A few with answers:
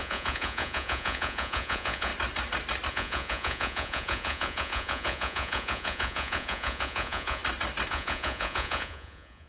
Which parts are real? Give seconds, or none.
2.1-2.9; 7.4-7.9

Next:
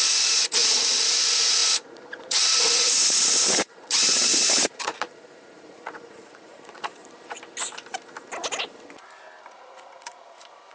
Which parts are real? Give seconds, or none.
7.0-9.5

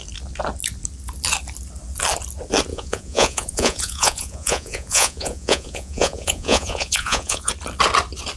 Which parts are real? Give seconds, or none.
0.0-2.7; 7.5-8.4

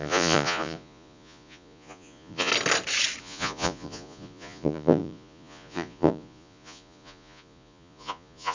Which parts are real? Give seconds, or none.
2.5-3.2